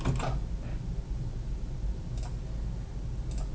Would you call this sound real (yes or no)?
yes